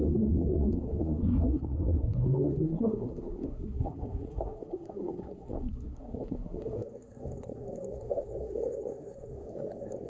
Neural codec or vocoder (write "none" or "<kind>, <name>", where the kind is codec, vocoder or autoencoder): codec, SNAC